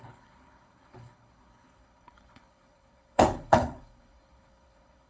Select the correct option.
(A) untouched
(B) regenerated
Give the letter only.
B